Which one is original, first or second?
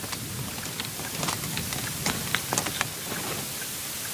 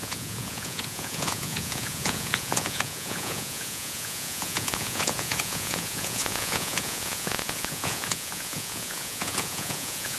first